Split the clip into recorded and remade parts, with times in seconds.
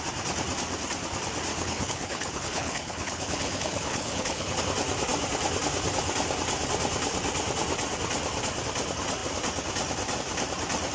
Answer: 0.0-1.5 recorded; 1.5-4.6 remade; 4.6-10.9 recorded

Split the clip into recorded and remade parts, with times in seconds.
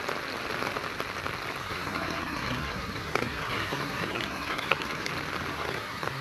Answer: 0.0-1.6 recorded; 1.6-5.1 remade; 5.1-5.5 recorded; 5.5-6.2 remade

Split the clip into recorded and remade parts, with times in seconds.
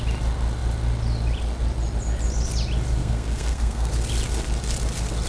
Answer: 0.0-3.0 recorded; 3.0-3.9 remade; 3.9-5.3 recorded